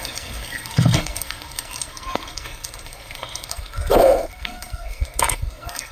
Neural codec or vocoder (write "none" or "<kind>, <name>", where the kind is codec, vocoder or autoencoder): codec, SNAC